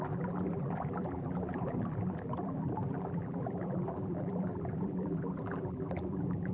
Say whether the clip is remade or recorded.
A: remade